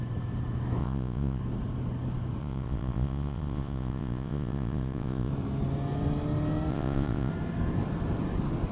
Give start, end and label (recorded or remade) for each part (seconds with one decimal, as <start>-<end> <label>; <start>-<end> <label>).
0.0-0.8 recorded; 0.8-1.4 remade; 1.4-2.4 recorded; 2.4-5.3 remade; 5.3-6.7 recorded; 6.7-7.3 remade; 7.3-8.7 recorded